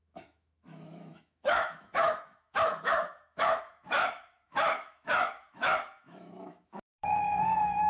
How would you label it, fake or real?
fake